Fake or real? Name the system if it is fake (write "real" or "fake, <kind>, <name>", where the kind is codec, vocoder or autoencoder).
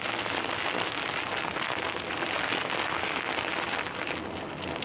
real